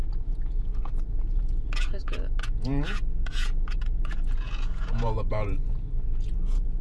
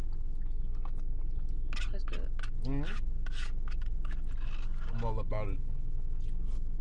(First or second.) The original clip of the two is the second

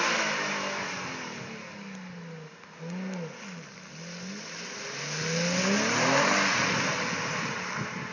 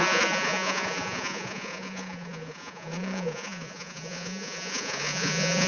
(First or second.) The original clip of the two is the first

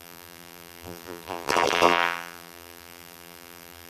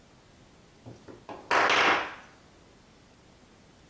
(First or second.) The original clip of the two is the second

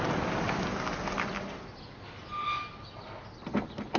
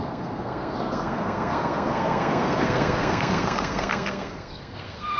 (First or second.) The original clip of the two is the first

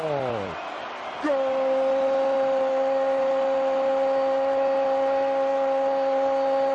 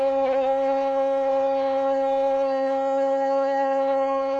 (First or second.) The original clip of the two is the first